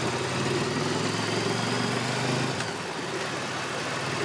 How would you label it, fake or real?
real